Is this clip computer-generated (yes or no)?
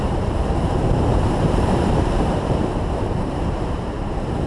yes